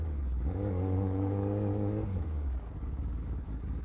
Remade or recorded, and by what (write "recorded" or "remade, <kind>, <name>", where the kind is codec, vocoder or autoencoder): remade, codec, DAC